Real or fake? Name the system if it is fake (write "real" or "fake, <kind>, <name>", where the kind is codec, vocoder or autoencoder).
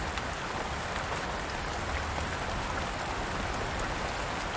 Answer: real